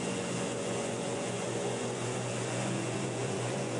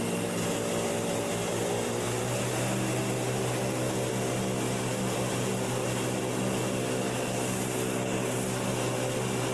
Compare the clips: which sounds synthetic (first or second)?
first